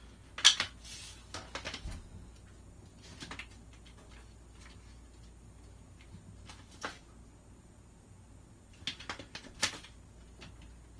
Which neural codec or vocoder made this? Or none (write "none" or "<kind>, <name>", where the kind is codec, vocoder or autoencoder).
none